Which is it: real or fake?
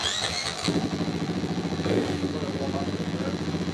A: fake